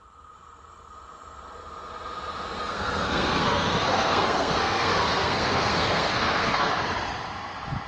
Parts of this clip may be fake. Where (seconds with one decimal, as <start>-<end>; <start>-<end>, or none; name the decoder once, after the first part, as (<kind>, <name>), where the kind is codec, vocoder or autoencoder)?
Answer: 2.6-6.7 (codec, SNAC)